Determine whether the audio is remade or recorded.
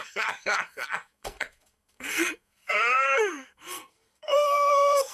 remade